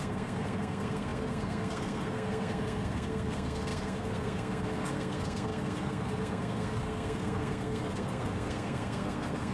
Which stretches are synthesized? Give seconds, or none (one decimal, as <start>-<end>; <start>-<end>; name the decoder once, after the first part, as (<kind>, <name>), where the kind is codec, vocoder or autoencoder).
0.0-9.5 (codec, SNAC)